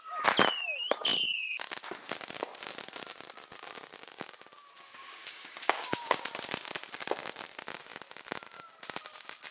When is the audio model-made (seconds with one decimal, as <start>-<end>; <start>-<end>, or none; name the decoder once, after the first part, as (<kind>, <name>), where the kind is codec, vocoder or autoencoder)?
5.0-6.3 (codec, DAC)